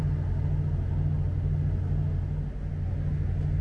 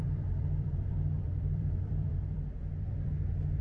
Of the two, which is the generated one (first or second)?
second